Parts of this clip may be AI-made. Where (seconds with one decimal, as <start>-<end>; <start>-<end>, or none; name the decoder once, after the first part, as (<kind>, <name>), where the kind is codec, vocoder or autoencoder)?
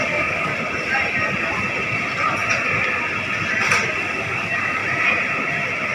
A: 0.0-0.5 (codec, DAC); 4.0-4.8